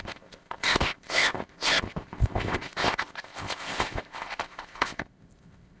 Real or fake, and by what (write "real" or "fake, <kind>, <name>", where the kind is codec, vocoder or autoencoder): fake, codec, ZipCodec